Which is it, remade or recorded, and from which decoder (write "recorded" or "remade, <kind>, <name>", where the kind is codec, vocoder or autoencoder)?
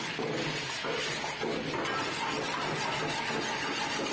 recorded